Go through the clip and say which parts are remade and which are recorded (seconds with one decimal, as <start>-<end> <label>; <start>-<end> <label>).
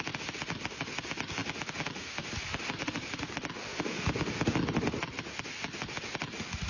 0.0-6.7 recorded